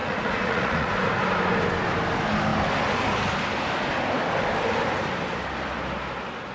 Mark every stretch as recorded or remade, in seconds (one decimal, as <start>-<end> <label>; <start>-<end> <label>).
0.0-0.9 remade; 0.9-6.5 recorded